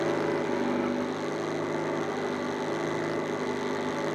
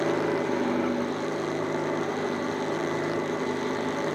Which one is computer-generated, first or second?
second